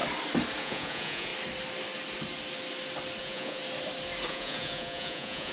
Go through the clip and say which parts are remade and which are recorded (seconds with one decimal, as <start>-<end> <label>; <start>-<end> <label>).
0.0-0.6 recorded; 0.6-1.3 remade; 1.3-3.2 recorded; 3.2-3.6 remade; 3.6-4.3 recorded; 4.3-5.5 remade